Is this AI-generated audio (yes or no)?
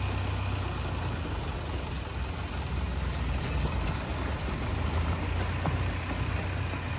no